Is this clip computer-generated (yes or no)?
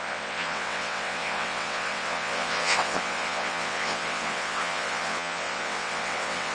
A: yes